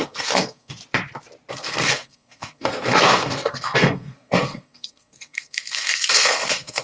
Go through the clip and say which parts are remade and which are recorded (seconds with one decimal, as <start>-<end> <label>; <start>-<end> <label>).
0.0-0.8 remade; 0.8-1.5 recorded; 1.5-6.8 remade